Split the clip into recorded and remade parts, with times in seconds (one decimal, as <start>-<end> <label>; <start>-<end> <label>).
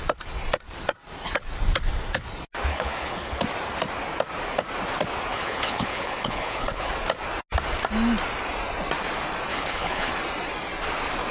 0.0-2.7 recorded; 2.7-3.4 remade; 3.4-5.3 recorded; 5.3-6.9 remade; 6.9-9.5 recorded; 9.5-10.1 remade; 10.1-11.3 recorded